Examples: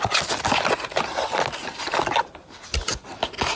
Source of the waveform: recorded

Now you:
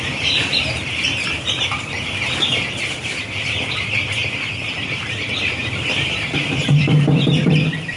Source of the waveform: remade